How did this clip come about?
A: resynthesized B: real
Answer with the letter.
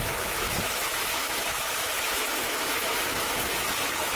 A